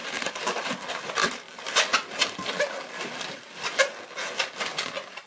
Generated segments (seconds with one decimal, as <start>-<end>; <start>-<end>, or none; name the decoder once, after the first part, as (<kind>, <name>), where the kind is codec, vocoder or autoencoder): 0.0-0.7 (vocoder, BigVGAN v2)